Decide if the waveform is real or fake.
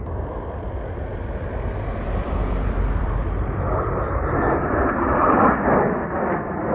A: fake